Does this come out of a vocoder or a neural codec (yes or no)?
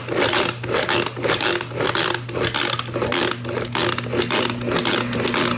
no